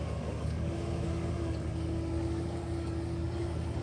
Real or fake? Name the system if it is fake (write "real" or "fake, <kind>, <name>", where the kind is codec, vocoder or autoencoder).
fake, codec, DAC